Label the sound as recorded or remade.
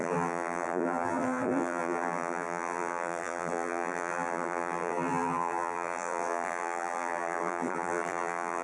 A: remade